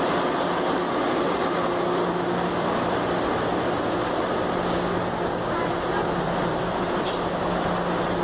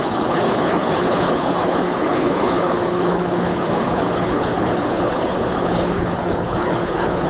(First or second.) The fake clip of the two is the second